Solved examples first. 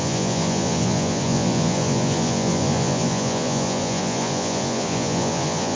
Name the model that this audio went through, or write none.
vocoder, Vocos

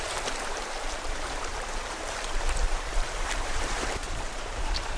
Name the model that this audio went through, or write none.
vocoder, BigVGAN v2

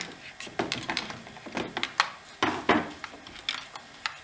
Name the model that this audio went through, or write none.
none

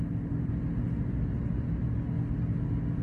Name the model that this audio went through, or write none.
none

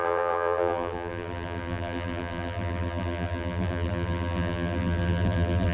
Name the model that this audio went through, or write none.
vocoder, BigVGAN v2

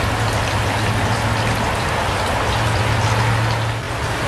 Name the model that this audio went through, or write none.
none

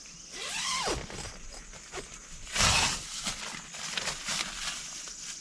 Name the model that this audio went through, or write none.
none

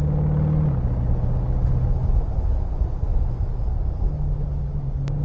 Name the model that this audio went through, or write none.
none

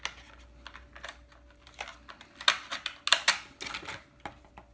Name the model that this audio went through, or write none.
none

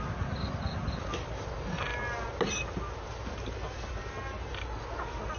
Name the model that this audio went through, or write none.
none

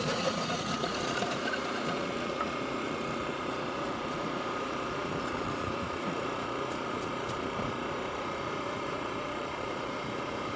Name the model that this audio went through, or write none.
vocoder, Vocos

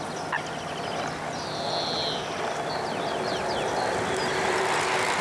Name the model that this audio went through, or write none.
none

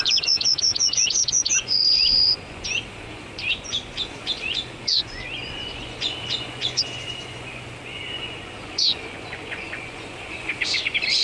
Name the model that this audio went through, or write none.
vocoder, Vocos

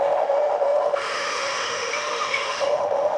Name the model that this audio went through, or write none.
autoencoder, DAC-VAE